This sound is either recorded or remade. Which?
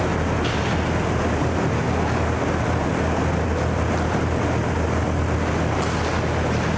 recorded